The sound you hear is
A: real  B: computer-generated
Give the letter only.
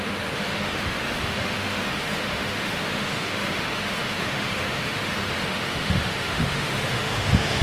B